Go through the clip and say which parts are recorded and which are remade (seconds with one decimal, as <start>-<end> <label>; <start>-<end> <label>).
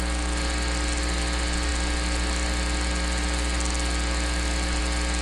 0.0-5.2 recorded